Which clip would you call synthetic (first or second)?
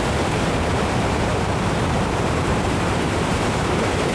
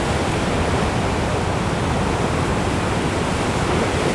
first